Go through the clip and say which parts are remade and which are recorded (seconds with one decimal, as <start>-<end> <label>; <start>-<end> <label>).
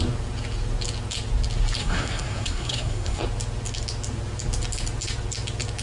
0.0-1.8 recorded; 1.8-3.2 remade; 3.2-5.8 recorded